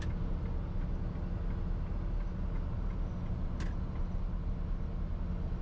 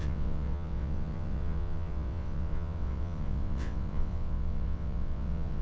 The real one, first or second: first